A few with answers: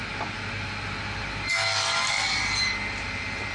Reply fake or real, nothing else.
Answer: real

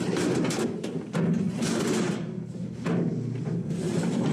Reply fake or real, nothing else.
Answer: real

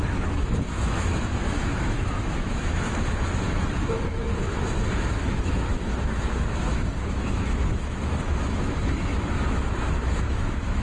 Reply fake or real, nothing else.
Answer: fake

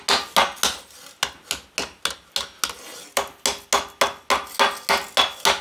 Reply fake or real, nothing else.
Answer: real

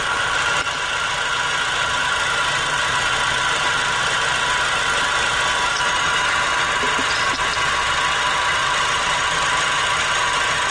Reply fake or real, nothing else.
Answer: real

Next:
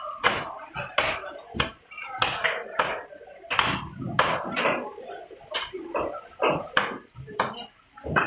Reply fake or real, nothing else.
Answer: real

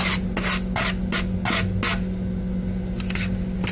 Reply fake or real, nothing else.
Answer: real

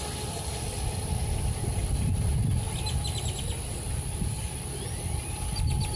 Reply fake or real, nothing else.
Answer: real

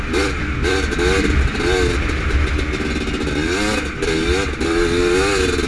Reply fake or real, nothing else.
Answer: real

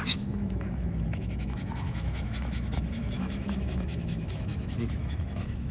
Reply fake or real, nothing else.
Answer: fake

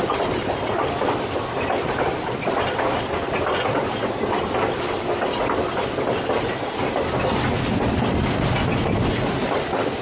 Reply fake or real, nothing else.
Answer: real